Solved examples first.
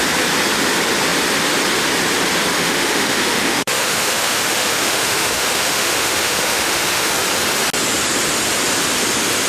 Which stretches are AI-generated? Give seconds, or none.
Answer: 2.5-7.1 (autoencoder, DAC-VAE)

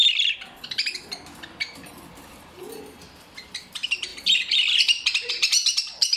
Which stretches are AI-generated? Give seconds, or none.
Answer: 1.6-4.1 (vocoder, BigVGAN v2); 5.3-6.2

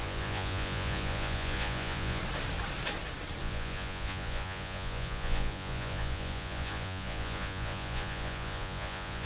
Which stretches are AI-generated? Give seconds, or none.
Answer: 0.0-2.2 (vocoder, Vocos); 3.4-9.3

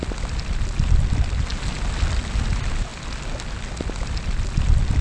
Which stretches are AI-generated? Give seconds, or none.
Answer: none

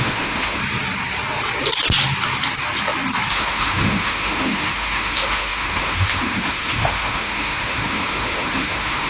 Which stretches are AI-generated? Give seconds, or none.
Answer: 0.0-0.6 (autoencoder, DAC-VAE); 3.3-9.1